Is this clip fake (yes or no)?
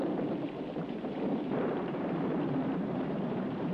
yes